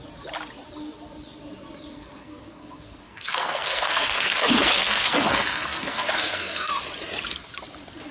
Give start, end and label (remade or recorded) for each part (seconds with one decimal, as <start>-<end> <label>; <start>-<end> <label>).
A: 0.0-1.9 recorded; 1.9-6.8 remade; 6.8-8.1 recorded

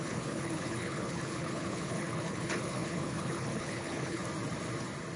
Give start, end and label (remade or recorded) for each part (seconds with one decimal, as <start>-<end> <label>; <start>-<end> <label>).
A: 0.0-4.2 remade; 4.2-5.2 recorded

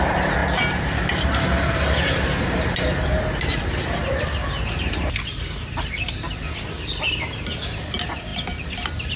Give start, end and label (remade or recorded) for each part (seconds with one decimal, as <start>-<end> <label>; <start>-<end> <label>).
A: 0.0-9.2 recorded

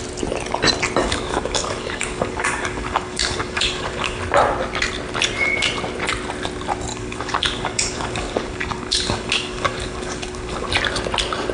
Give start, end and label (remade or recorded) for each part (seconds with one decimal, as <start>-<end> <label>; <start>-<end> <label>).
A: 0.0-1.0 recorded; 1.0-4.2 remade; 4.2-6.9 recorded; 6.9-10.7 remade; 10.7-11.5 recorded

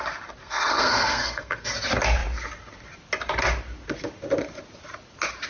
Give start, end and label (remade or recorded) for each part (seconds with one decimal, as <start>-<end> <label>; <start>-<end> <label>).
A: 0.0-0.4 recorded; 0.4-1.7 remade; 1.7-5.5 recorded

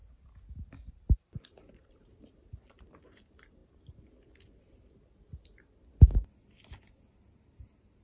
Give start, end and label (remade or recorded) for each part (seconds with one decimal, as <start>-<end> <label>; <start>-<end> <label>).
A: 0.0-0.9 recorded; 0.9-3.6 remade; 3.6-8.0 recorded